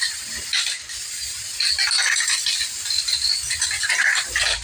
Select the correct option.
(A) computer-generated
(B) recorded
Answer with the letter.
B